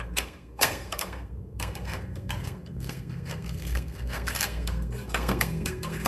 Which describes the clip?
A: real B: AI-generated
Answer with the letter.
B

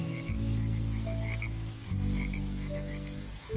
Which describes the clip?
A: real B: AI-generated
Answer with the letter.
B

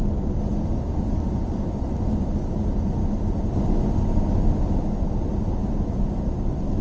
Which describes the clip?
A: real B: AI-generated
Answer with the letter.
A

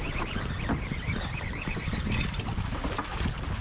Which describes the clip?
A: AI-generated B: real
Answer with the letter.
B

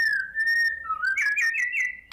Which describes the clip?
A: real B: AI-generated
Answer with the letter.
A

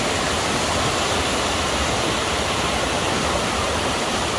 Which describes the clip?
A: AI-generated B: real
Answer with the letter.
B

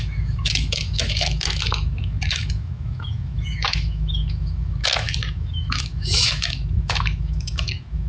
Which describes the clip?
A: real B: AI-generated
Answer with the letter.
B